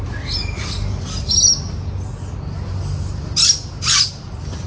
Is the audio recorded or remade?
recorded